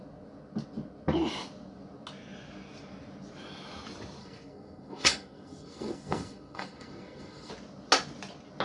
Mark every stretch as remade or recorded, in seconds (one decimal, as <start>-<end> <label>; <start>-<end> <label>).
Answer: 0.0-4.2 recorded; 4.2-7.5 remade; 7.5-8.6 recorded